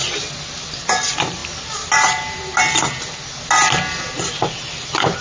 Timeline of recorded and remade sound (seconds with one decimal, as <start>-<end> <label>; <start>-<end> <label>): 0.0-5.2 recorded